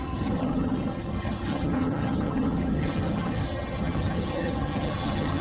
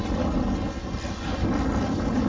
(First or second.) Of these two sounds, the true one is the second